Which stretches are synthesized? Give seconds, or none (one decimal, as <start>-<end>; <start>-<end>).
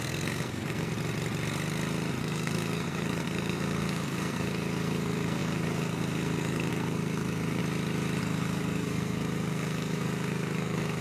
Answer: 0.0-0.9; 2.2-7.6; 8.2-11.0